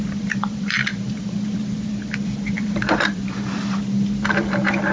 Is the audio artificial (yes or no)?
yes